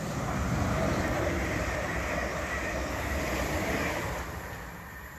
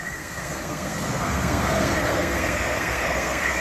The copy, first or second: second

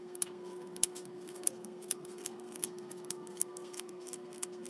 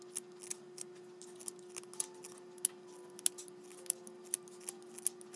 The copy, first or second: first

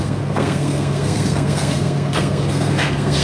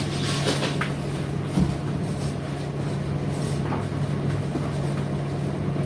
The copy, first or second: first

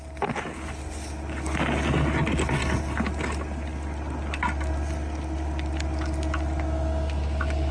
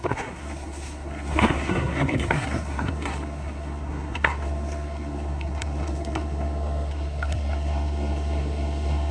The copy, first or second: second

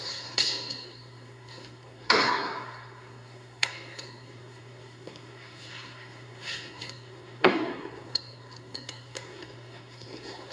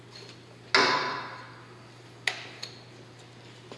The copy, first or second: first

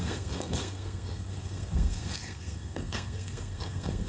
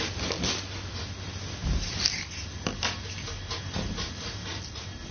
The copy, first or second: first